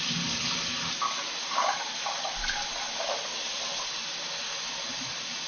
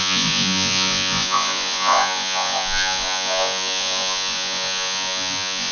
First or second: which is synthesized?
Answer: second